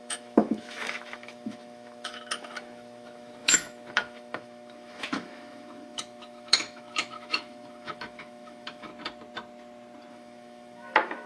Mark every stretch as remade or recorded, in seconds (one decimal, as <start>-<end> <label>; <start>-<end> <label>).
0.0-8.9 remade; 8.9-10.1 recorded; 10.1-11.3 remade